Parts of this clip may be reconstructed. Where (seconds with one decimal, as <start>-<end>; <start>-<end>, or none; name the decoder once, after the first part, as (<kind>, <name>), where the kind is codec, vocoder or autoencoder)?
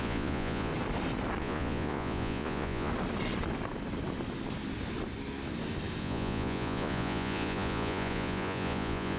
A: 0.0-0.7 (vocoder, Vocos); 1.4-2.9; 6.0-9.2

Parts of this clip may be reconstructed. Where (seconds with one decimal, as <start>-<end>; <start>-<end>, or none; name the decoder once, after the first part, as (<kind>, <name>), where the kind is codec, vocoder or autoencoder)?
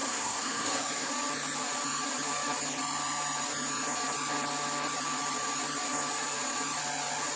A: 0.0-1.1 (codec, SNAC)